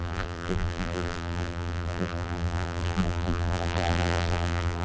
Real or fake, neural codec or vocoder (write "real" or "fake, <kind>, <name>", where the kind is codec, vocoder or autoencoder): fake, vocoder, BigVGAN v2